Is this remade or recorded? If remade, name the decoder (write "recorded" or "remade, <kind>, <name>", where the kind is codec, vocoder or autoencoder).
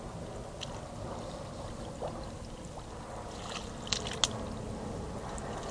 recorded